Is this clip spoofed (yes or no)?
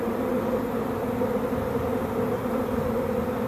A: no